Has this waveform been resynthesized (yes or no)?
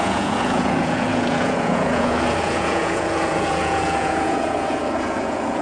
yes